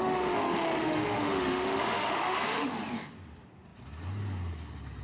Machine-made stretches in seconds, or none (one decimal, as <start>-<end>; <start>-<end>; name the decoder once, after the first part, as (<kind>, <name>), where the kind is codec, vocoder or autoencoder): 0.0-2.7 (autoencoder, DAC-VAE)